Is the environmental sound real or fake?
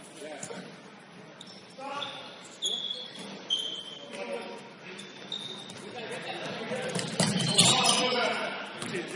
real